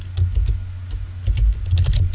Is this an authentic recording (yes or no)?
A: yes